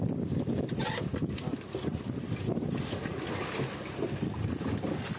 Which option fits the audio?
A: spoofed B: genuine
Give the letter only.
B